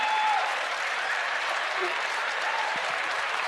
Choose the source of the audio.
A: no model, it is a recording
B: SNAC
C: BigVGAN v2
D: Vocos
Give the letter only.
C